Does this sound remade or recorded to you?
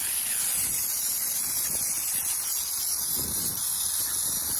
recorded